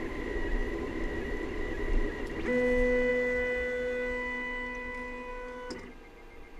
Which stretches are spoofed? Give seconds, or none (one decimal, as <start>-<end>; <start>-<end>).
0.6-2.4